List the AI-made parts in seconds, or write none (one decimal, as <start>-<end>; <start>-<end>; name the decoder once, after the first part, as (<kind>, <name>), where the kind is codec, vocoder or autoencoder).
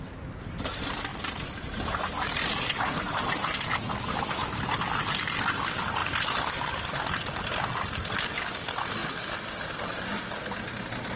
1.1-4.2 (vocoder, BigVGAN v2)